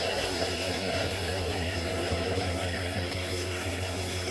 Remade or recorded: remade